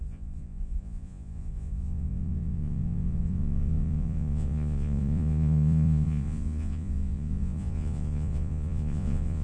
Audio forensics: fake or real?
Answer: fake